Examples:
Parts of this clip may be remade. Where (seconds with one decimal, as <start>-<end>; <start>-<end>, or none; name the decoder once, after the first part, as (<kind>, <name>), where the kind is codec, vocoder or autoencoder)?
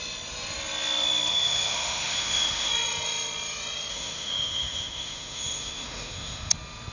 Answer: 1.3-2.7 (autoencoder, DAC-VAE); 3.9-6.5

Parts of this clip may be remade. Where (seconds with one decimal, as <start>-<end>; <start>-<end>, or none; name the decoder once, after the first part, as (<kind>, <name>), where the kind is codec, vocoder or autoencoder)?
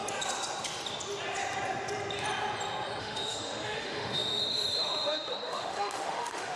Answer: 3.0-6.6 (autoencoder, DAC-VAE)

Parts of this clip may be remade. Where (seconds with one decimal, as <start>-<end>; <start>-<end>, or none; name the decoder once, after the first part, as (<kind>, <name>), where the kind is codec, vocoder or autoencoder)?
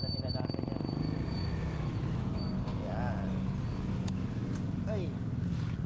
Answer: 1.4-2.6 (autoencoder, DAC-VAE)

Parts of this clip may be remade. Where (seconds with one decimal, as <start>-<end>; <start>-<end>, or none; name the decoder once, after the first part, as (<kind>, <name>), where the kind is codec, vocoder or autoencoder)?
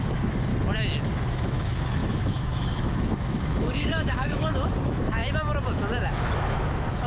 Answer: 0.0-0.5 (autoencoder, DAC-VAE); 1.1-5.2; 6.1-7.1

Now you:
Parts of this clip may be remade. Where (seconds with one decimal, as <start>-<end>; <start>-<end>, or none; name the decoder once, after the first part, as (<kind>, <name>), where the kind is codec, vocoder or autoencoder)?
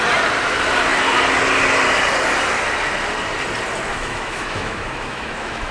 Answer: 3.9-5.7 (autoencoder, DAC-VAE)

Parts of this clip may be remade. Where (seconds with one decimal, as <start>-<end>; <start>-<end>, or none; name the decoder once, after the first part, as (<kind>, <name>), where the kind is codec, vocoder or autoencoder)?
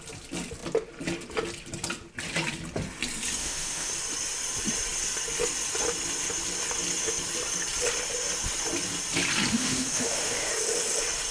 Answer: 3.4-3.9 (autoencoder, DAC-VAE); 9.5-10.5